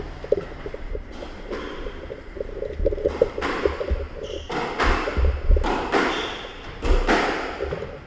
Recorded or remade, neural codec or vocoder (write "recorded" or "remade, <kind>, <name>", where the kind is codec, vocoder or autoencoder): recorded